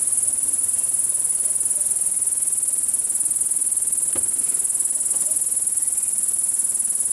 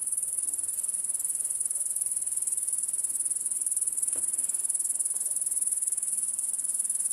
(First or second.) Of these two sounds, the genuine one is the first